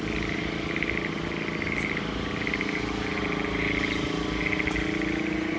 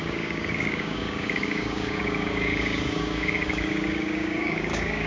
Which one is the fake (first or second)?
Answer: second